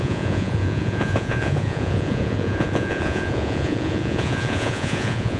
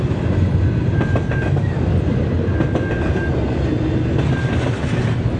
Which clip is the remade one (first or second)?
first